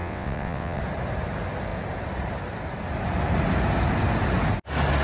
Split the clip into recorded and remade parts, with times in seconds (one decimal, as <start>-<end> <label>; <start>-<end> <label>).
0.0-0.8 remade; 0.8-5.0 recorded